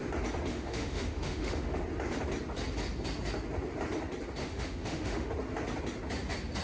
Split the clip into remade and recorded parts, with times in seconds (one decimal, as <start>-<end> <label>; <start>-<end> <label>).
0.0-0.5 recorded; 0.5-1.8 remade; 1.8-4.4 recorded; 4.4-5.3 remade; 5.3-6.6 recorded